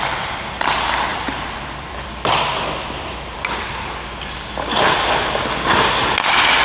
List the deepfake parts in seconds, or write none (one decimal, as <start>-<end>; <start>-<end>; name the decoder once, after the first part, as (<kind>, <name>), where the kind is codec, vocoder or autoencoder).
1.1-5.1 (vocoder, BigVGAN v2)